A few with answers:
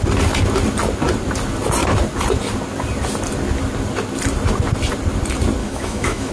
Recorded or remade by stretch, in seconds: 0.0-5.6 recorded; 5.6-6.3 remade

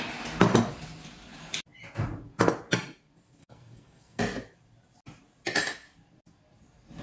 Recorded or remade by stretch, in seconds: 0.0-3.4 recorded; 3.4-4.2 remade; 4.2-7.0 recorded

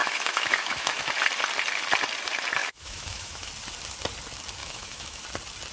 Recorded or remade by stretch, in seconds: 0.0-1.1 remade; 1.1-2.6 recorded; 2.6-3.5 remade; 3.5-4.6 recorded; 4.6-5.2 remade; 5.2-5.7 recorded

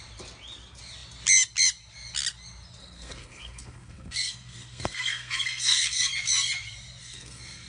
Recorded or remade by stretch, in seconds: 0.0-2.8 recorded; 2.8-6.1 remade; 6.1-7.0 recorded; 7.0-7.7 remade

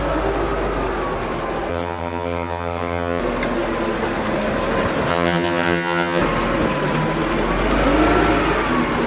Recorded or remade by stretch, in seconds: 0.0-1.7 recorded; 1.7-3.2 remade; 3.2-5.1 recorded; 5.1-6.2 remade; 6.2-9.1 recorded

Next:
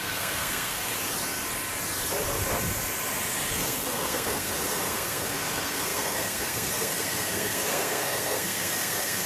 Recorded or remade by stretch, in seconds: 0.0-0.9 remade; 0.9-3.5 recorded; 3.5-9.3 remade